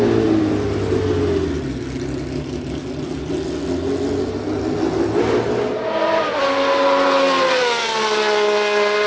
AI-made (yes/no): no